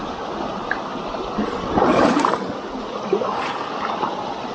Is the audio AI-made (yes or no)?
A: no